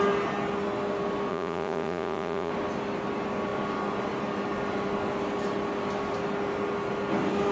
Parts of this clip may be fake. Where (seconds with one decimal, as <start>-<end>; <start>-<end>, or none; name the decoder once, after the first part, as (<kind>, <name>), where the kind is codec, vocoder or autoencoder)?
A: 1.3-2.5 (vocoder, Vocos)